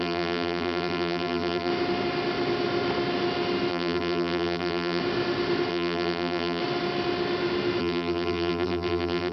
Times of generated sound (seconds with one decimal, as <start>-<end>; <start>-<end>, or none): 0.0-1.7; 3.7-5.0; 5.7-6.6; 7.8-9.3